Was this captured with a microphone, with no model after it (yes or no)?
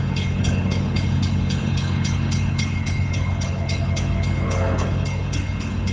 no